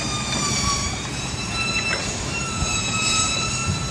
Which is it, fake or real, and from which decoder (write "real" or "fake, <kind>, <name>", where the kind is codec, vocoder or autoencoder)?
fake, vocoder, BigVGAN v2